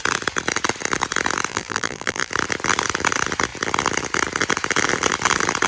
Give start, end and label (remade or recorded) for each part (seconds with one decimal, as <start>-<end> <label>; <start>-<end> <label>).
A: 0.0-1.5 recorded; 1.5-2.3 remade; 2.3-5.7 recorded